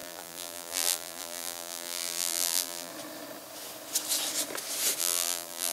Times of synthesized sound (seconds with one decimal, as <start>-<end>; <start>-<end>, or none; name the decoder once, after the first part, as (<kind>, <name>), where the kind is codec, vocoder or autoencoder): 0.0-2.9 (vocoder, BigVGAN v2); 5.0-5.7